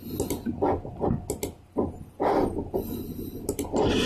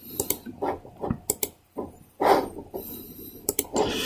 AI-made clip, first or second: second